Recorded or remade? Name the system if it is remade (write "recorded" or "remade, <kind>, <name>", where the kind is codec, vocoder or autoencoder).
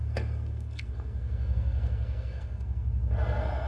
remade, codec, SNAC